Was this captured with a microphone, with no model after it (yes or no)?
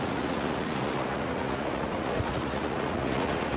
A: no